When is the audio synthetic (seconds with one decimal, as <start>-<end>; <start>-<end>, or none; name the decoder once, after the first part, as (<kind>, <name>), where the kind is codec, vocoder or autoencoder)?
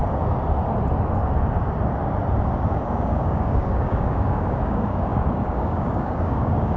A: 2.7-6.8 (codec, DAC)